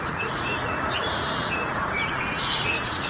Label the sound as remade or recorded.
remade